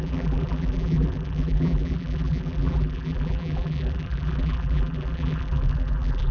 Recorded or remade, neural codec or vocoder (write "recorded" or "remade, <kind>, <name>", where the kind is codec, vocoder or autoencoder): remade, vocoder, BigVGAN v2